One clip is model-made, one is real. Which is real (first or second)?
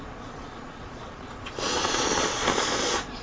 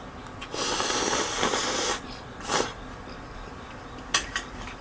second